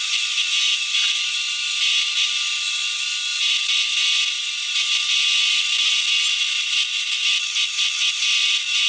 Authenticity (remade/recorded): recorded